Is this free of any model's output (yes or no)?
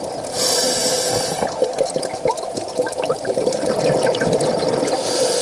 yes